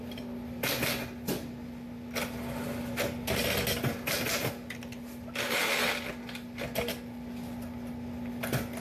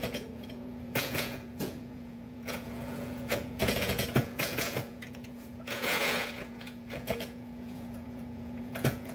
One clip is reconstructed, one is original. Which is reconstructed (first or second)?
second